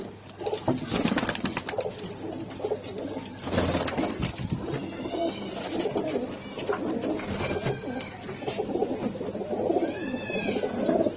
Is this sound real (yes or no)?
yes